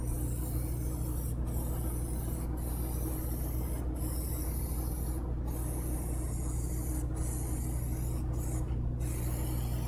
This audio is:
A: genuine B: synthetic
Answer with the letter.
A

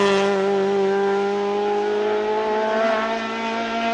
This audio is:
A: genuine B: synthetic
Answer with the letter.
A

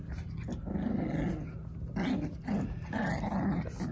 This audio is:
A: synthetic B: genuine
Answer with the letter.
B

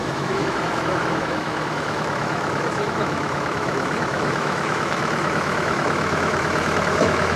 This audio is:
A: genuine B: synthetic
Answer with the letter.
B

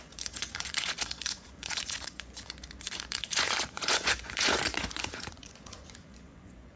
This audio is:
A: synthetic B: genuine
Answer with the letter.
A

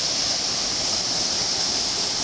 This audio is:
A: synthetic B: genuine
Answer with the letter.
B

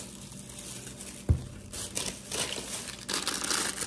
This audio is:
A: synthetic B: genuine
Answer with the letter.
B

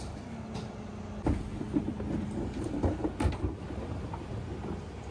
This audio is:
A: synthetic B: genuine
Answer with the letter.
B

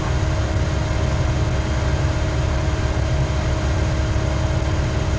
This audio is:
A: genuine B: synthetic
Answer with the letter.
A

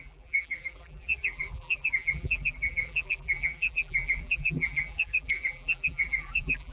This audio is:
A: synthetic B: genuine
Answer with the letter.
A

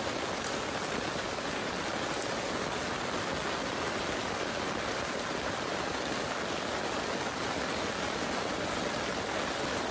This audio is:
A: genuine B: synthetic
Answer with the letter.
A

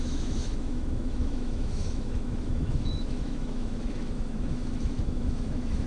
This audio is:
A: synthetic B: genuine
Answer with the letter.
A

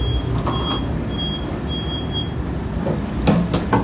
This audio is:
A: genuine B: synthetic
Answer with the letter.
A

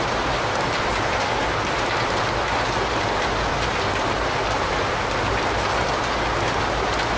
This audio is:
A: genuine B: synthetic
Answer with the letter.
A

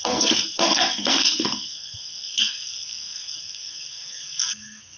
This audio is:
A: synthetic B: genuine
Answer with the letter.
A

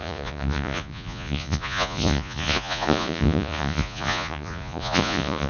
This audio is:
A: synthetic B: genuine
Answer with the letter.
A